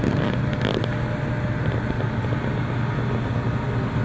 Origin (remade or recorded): recorded